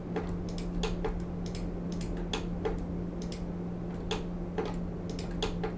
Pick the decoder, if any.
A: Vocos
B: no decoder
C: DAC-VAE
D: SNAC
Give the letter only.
B